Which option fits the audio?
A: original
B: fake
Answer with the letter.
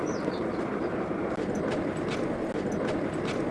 A